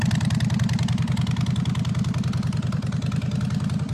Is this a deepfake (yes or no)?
no